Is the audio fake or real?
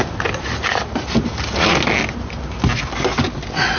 real